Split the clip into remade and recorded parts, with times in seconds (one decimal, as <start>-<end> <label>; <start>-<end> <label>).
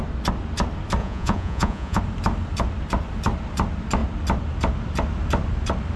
0.0-1.0 recorded; 1.0-2.0 remade; 2.0-6.0 recorded